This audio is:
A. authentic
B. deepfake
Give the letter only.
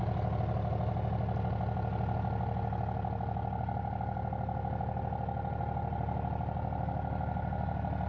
A